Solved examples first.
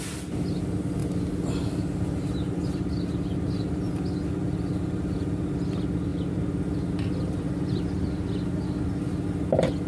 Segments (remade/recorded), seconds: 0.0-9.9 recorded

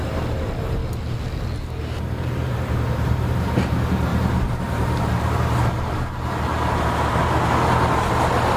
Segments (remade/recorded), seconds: 0.0-0.8 remade; 0.8-1.8 recorded; 1.8-6.5 remade; 6.5-8.6 recorded

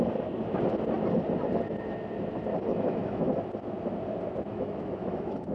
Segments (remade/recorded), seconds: 0.0-2.7 recorded; 2.7-3.3 remade; 3.3-4.5 recorded; 4.5-5.5 remade

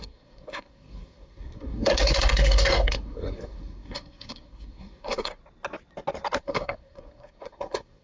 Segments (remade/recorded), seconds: 0.0-5.4 remade; 5.4-6.4 recorded; 6.4-8.0 remade

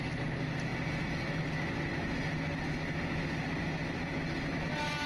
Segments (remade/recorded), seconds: 0.0-5.1 recorded